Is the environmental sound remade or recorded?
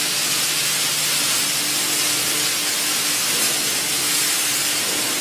recorded